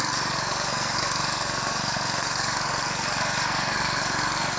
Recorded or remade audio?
remade